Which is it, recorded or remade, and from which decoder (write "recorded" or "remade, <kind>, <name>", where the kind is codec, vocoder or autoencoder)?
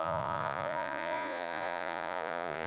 remade, vocoder, Vocos